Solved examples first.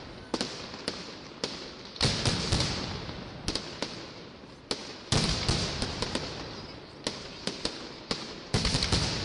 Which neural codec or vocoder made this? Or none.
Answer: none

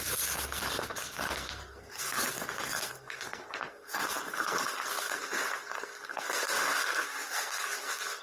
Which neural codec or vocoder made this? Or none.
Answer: codec, SNAC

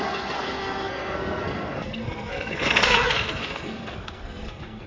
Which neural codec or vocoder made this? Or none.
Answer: codec, SNAC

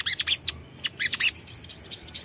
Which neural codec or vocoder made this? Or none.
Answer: none